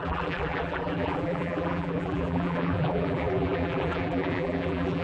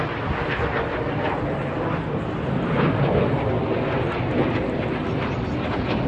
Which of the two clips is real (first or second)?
second